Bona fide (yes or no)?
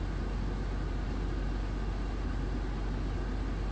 yes